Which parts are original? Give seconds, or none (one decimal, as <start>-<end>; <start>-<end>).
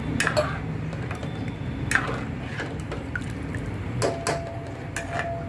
0.0-5.5